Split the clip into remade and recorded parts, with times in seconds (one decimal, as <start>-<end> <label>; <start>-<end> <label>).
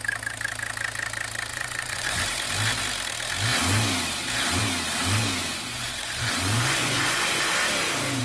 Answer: 0.0-1.5 recorded; 1.5-2.5 remade; 2.5-5.4 recorded; 5.4-7.5 remade; 7.5-8.2 recorded